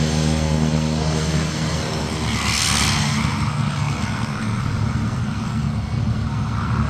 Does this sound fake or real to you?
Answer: fake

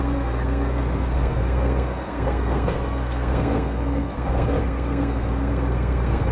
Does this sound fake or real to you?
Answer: fake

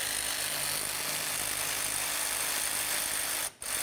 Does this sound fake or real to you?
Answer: real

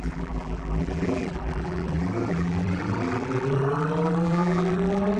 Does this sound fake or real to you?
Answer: fake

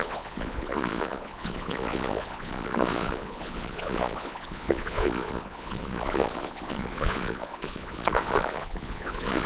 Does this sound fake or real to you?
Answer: fake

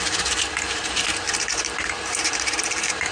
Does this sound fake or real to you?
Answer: fake